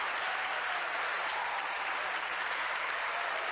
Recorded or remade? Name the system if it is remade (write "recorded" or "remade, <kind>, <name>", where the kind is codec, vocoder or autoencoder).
remade, vocoder, BigVGAN v2